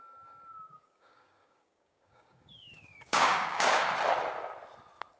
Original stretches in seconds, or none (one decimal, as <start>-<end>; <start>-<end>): 0.0-0.7; 3.8-5.2